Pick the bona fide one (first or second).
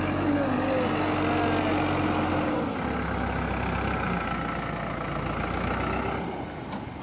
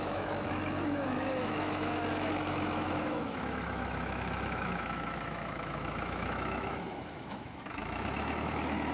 first